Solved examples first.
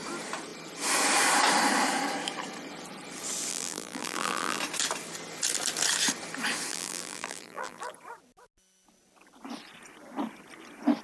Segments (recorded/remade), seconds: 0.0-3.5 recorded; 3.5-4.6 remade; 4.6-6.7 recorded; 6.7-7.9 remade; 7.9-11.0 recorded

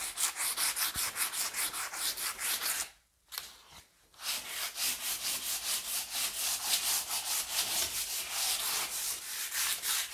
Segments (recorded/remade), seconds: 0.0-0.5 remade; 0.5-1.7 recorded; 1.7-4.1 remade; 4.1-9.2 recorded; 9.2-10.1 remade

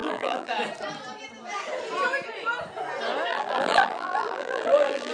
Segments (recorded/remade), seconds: 0.0-0.5 remade; 0.5-3.3 recorded; 3.3-5.1 remade

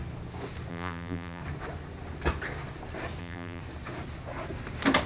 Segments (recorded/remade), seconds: 0.0-0.7 recorded; 0.7-1.4 remade; 1.4-3.2 recorded; 3.2-3.6 remade; 3.6-5.1 recorded

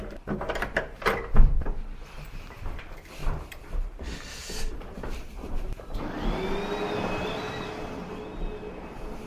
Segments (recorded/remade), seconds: 0.0-3.2 recorded; 3.2-6.0 remade; 6.0-7.2 recorded; 7.2-7.7 remade; 7.7-9.3 recorded